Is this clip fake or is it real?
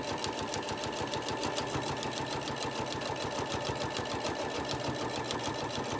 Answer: real